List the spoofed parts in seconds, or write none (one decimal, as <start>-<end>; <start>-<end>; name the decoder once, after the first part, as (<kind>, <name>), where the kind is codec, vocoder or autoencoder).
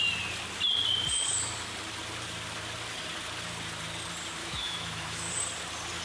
4.4-5.3 (autoencoder, DAC-VAE)